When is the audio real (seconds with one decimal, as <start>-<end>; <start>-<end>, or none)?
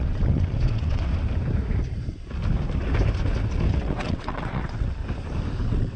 1.1-3.8; 5.0-5.6